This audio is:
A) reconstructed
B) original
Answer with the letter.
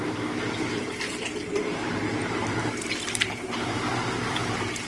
A